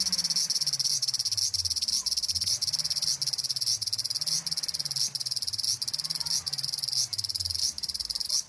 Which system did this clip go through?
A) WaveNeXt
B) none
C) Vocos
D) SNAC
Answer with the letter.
B